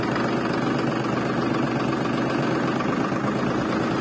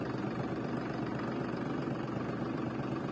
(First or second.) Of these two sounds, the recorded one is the first